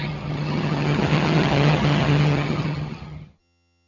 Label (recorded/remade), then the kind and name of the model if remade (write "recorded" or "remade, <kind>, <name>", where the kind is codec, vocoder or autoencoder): remade, vocoder, HiFi-GAN